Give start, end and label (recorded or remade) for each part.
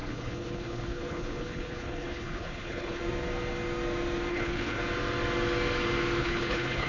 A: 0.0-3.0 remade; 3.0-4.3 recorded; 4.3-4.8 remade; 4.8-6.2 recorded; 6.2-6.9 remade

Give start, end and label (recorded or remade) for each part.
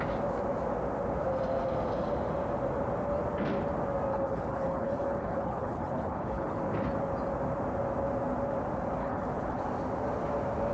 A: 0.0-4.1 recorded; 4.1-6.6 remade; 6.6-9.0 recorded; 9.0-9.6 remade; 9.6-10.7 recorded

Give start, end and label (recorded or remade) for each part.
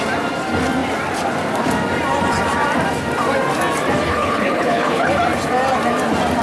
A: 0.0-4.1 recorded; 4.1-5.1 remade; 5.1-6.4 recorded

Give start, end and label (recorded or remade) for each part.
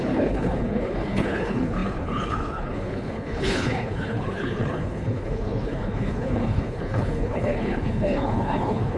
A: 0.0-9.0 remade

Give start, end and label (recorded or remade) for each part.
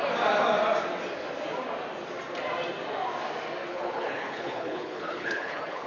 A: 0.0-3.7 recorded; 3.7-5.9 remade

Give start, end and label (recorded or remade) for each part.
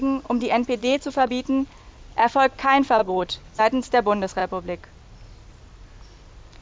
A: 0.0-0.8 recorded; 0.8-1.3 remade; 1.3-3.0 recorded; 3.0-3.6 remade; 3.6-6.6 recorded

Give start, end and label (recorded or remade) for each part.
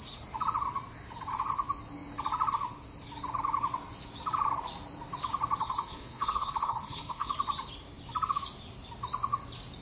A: 0.0-5.6 recorded; 5.6-7.3 remade; 7.3-9.8 recorded